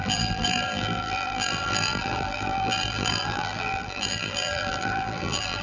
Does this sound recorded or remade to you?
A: remade